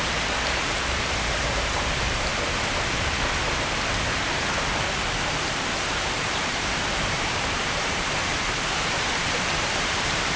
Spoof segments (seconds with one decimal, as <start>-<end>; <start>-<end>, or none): 0.0-2.3; 5.7-8.2; 8.7-10.4